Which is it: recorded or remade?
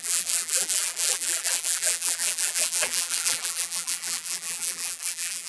remade